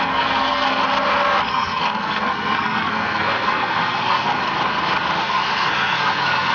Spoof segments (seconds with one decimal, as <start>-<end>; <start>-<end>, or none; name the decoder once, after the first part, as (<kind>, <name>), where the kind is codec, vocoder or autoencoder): 0.0-0.8 (codec, SNAC); 1.5-4.3; 5.2-6.5